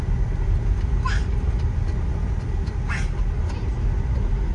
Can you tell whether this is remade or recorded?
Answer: recorded